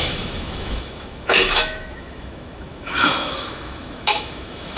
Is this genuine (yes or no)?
no